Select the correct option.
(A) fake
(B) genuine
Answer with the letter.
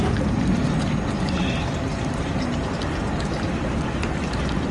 B